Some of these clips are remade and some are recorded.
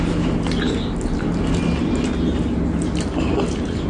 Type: recorded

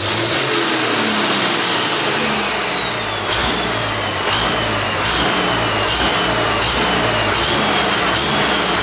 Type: recorded